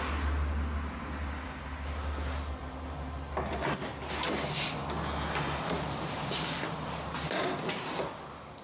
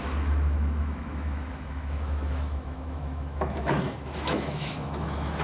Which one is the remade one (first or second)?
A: second